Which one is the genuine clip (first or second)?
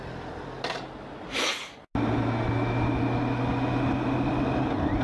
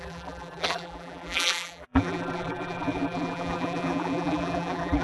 first